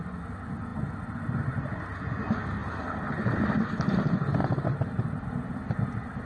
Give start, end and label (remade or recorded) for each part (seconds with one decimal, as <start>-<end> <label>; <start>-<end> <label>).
0.0-6.3 recorded